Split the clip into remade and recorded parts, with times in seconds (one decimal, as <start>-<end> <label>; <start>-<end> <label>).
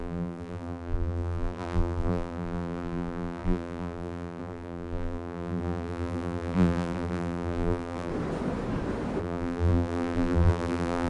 0.0-8.1 remade; 8.1-9.2 recorded; 9.2-11.1 remade